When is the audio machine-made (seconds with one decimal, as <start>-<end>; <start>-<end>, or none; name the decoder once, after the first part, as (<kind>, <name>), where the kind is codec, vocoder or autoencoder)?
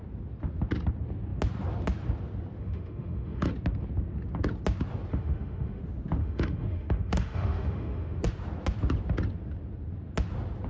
2.6-3.5 (autoencoder, DAC-VAE); 5.1-5.8; 6.2-8.2